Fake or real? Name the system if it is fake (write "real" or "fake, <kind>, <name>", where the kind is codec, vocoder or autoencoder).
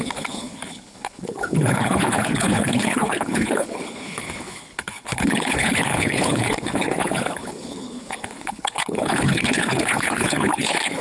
fake, codec, HILCodec